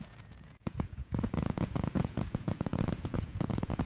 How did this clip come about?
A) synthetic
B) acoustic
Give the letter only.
A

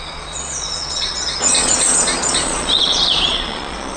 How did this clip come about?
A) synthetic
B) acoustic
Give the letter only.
A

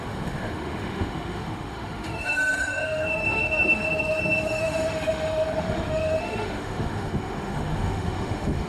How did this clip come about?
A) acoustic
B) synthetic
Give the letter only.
B